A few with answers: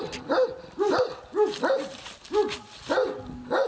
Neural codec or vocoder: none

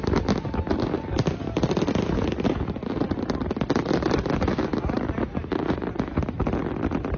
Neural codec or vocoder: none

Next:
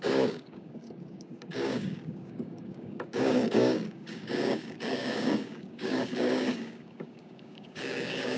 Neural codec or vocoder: codec, DAC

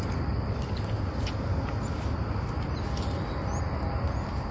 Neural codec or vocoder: none